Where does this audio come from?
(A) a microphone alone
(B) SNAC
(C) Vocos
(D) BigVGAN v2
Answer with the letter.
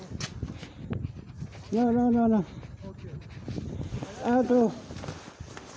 A